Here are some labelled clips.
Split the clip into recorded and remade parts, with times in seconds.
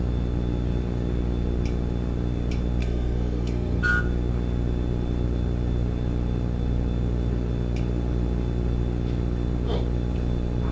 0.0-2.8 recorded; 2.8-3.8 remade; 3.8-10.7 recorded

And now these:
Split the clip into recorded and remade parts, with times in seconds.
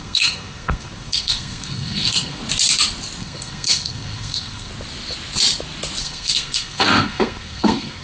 0.0-2.4 remade; 2.4-3.2 recorded; 3.2-4.7 remade; 4.7-6.0 recorded; 6.0-8.0 remade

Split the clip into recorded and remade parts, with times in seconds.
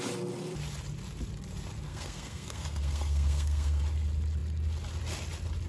0.0-1.9 recorded; 1.9-3.8 remade; 3.8-5.7 recorded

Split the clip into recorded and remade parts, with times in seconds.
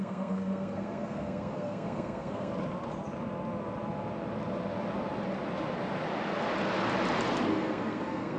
0.0-2.5 remade; 2.5-7.5 recorded; 7.5-8.4 remade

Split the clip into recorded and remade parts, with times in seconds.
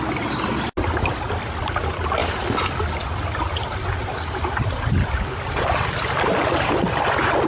0.0-7.5 recorded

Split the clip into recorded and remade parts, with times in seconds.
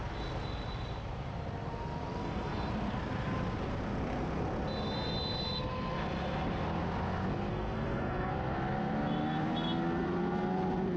0.0-2.2 recorded; 2.2-2.7 remade; 2.7-7.5 recorded; 7.5-8.3 remade; 8.3-11.0 recorded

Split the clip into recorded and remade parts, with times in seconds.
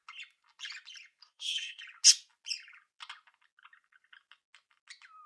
0.0-1.2 recorded; 1.2-1.8 remade; 1.8-5.3 recorded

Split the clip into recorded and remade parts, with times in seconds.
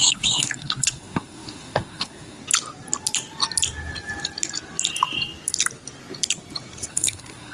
0.0-2.4 remade; 2.4-6.9 recorded; 6.9-7.5 remade